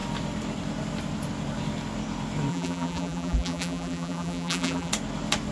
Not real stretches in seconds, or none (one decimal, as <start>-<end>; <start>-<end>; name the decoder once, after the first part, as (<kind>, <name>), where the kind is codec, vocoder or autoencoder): 2.5-4.9 (vocoder, BigVGAN v2)